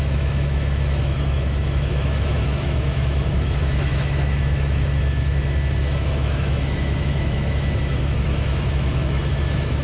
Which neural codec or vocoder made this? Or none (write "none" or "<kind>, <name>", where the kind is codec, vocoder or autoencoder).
autoencoder, DAC-VAE